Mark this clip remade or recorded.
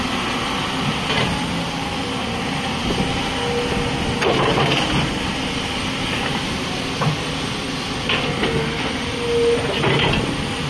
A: recorded